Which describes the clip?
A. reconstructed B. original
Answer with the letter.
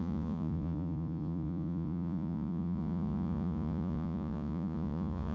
A